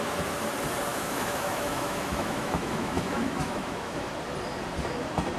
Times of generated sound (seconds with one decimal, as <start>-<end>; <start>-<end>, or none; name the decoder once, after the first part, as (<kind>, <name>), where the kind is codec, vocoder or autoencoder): 0.9-4.1 (autoencoder, DAC-VAE)